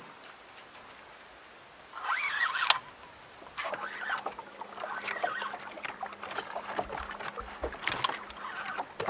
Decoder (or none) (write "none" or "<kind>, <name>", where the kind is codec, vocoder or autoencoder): none